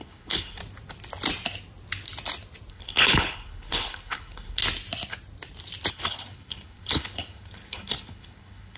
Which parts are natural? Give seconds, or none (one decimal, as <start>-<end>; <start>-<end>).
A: 0.6-2.7; 4.6-5.9